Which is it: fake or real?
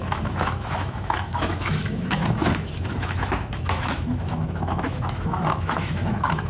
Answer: fake